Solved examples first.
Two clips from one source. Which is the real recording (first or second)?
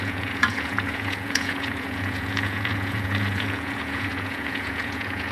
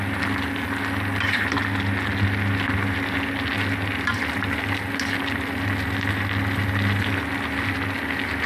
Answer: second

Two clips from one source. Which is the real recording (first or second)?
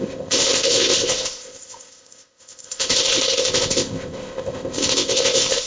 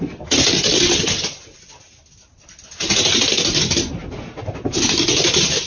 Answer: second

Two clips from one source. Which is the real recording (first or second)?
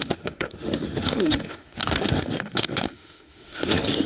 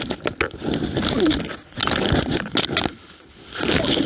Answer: second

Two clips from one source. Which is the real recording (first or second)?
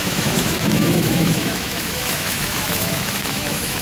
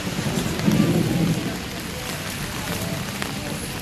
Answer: second